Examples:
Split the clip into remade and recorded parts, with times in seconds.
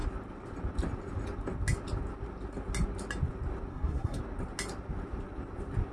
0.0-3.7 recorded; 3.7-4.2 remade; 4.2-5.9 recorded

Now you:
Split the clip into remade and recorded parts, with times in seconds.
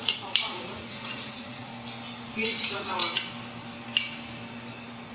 0.0-1.7 remade; 1.7-2.3 recorded; 2.3-3.0 remade; 3.0-5.1 recorded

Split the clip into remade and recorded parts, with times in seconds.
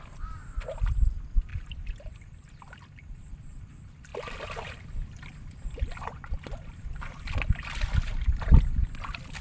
0.0-9.4 recorded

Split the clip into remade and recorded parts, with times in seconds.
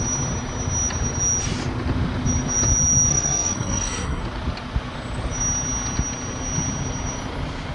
0.0-3.1 recorded; 3.1-4.2 remade; 4.2-7.7 recorded